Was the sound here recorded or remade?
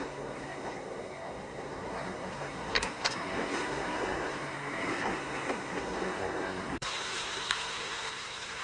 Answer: remade